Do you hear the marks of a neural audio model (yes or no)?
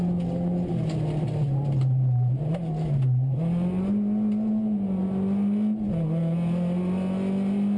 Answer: no